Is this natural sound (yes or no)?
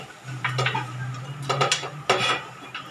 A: yes